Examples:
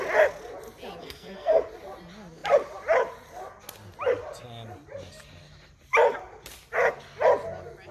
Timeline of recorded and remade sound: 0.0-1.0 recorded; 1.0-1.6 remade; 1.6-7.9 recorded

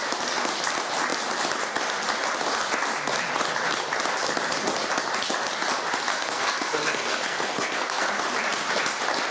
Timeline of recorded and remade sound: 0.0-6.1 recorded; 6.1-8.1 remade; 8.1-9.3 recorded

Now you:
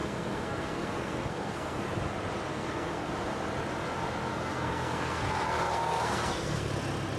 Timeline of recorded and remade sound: 0.0-1.8 remade; 1.8-2.5 recorded; 2.5-3.1 remade; 3.1-4.3 recorded; 4.3-6.7 remade; 6.7-7.2 recorded

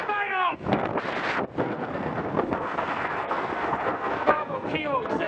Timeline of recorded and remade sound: 0.0-0.9 remade; 0.9-1.6 recorded; 1.6-5.3 remade

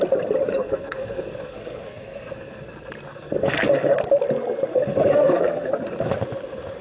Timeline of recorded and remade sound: 0.0-0.5 recorded; 0.5-2.7 remade; 2.7-3.1 recorded; 3.1-3.9 remade; 3.9-4.7 recorded; 4.7-5.7 remade; 5.7-6.8 recorded